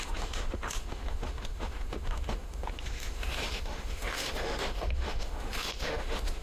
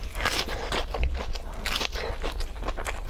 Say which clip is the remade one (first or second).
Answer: first